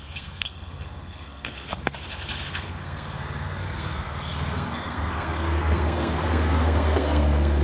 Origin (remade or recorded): remade